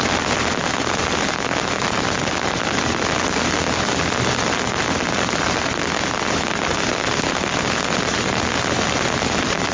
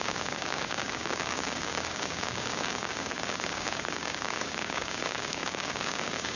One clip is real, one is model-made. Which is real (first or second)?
first